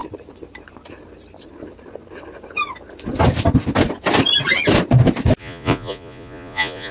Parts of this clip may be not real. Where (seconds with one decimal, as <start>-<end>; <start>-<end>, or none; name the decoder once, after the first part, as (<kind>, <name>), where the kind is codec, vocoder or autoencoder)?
5.4-6.9 (vocoder, Vocos)